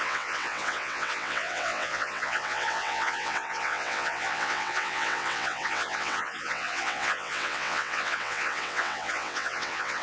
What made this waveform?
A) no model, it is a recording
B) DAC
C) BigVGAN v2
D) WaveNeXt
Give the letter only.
D